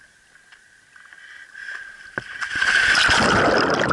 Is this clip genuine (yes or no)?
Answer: yes